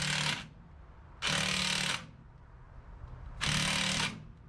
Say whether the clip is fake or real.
real